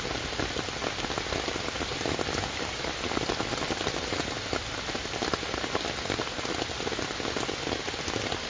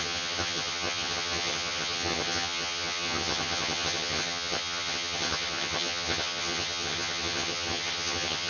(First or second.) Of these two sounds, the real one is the first